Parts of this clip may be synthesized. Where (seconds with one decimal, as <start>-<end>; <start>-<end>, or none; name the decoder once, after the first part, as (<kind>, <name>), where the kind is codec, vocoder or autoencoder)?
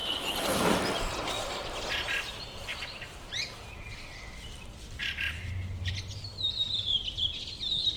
0.0-0.8 (vocoder, BigVGAN v2); 2.7-3.3; 5.0-5.9